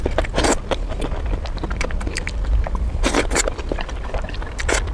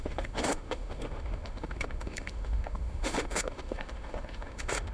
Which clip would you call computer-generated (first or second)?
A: second